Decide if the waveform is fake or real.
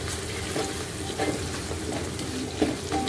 real